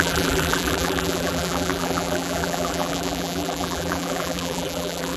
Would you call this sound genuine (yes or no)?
no